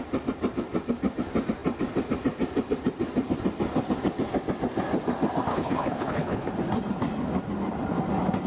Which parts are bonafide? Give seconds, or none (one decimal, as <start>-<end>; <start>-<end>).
0.0-5.5; 6.5-8.5